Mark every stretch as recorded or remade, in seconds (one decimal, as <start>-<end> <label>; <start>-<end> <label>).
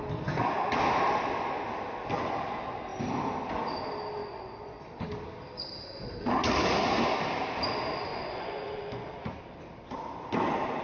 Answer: 0.0-4.2 recorded; 4.2-4.8 remade; 4.8-8.1 recorded; 8.1-9.3 remade; 9.3-10.8 recorded